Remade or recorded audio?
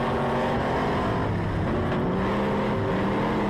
recorded